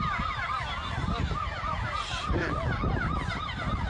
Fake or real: real